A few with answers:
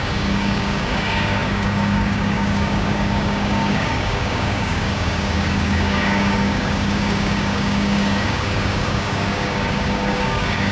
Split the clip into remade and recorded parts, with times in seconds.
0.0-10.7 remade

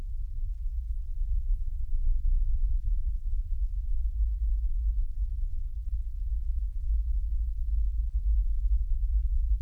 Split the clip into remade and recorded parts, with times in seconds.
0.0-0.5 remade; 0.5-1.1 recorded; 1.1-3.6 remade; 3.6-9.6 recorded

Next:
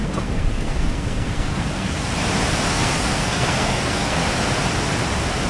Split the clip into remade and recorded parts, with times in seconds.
0.0-2.1 remade; 2.1-2.7 recorded; 2.7-4.2 remade; 4.2-5.5 recorded

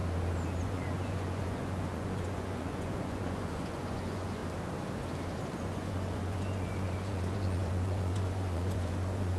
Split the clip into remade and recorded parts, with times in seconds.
0.0-0.6 recorded; 0.6-4.4 remade; 4.4-5.6 recorded; 5.6-9.4 remade